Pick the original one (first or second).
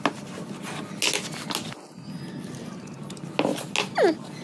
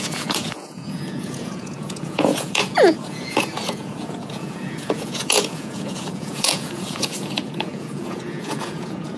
first